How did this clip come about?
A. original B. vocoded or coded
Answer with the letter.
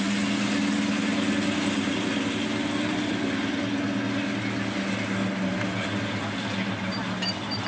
A